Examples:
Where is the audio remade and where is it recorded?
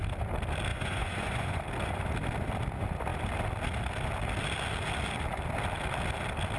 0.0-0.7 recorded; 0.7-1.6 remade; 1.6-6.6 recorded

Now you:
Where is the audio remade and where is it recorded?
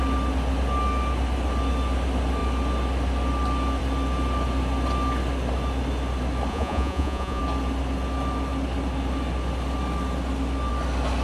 0.0-6.5 recorded; 6.5-7.4 remade; 7.4-11.2 recorded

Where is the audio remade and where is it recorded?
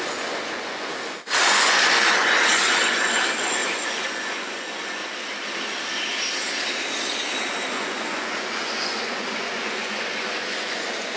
0.0-5.0 remade; 5.0-7.7 recorded; 7.7-11.2 remade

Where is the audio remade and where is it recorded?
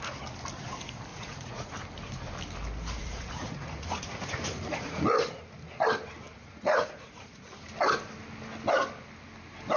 0.0-1.1 recorded; 1.1-1.7 remade; 1.7-3.0 recorded; 3.0-5.0 remade; 5.0-6.3 recorded; 6.3-7.5 remade; 7.5-9.8 recorded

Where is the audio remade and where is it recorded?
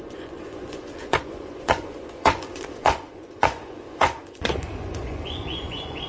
0.0-6.1 remade